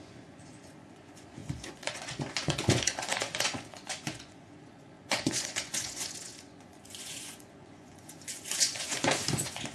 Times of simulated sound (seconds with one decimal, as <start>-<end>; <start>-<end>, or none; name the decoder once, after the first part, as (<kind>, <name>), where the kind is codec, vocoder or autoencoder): 0.0-9.7 (vocoder, Vocos)